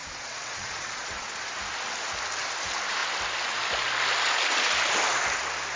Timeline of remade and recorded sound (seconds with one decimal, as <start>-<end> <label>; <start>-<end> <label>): 0.0-1.5 remade; 1.5-5.8 recorded